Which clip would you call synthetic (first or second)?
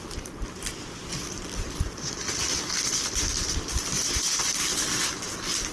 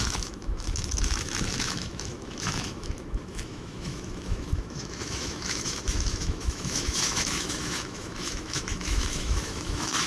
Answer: second